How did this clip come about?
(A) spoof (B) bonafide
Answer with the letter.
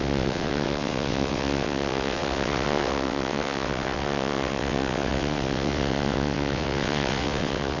A